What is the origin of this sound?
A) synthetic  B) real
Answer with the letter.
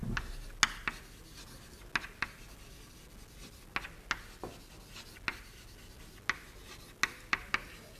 B